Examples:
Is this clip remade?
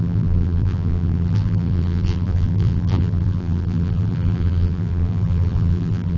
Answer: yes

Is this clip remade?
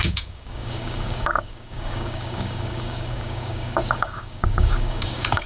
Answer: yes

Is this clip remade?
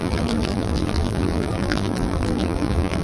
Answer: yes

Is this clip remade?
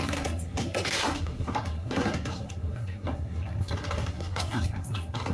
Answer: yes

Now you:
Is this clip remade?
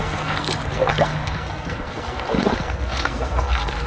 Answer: yes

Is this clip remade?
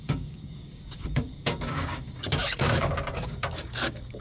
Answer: yes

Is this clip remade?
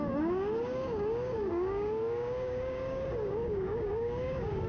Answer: yes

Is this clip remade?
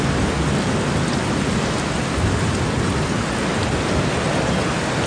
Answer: no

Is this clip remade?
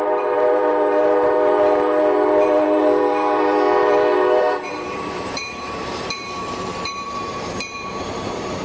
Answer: yes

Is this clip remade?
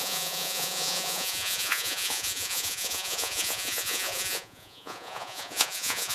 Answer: yes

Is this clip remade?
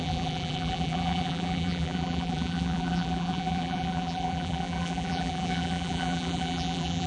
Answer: yes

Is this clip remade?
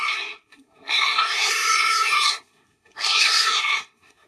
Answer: yes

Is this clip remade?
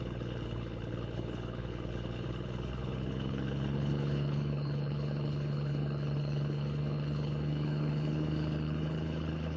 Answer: yes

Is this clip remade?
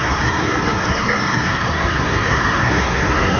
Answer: yes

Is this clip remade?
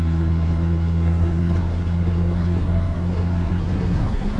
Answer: yes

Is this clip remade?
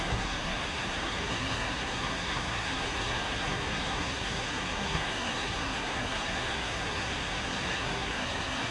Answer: yes